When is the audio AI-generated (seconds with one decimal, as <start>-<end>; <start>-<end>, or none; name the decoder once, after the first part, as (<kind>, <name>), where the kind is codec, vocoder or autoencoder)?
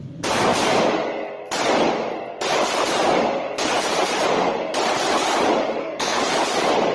5.8-6.3 (codec, SNAC)